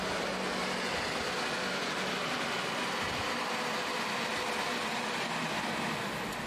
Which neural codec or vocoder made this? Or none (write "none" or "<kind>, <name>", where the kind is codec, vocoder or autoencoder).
none